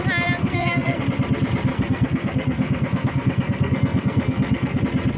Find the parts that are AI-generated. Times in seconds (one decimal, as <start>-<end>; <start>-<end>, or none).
0.4-1.0; 1.7-4.8